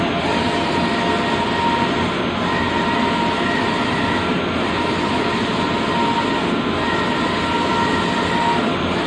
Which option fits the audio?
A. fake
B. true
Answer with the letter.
B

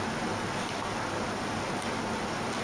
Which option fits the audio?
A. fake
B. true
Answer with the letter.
B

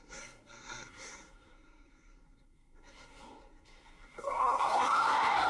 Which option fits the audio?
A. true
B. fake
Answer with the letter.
B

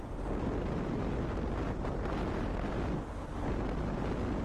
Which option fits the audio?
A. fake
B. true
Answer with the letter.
B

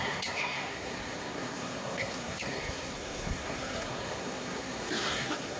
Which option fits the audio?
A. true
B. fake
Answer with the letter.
B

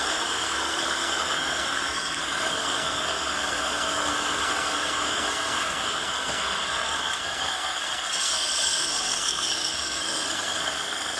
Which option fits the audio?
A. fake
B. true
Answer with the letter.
A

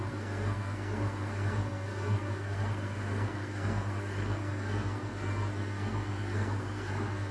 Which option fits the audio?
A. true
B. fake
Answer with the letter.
B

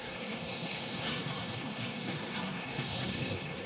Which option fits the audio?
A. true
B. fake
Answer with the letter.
B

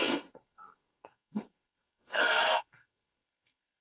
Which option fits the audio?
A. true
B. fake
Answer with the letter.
B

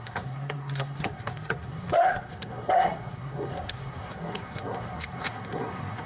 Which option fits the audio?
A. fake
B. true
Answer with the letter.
A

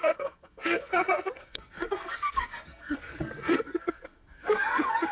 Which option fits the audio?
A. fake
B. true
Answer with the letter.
A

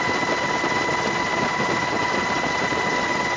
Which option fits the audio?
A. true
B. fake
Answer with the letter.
A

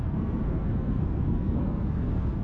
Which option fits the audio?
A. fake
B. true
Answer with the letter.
A